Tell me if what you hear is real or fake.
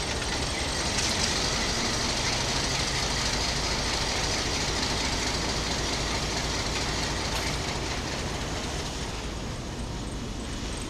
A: real